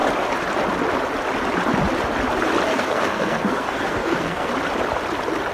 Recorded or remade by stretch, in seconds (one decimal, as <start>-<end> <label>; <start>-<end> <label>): 0.0-2.7 recorded; 2.7-4.5 remade; 4.5-5.5 recorded